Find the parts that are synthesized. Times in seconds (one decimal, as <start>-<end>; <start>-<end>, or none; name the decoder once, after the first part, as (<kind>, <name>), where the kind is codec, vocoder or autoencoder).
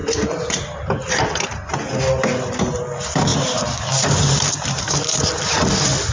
3.3-4.8 (vocoder, BigVGAN v2)